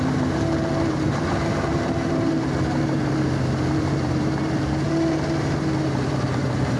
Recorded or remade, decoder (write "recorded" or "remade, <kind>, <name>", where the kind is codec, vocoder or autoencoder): remade, vocoder, BigVGAN v2